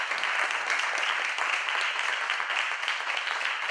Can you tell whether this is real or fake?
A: real